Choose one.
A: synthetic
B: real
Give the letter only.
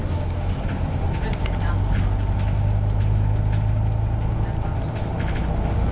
B